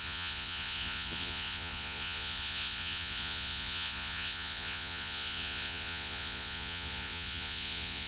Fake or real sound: fake